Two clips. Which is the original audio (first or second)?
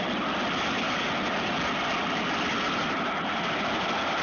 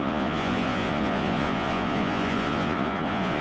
first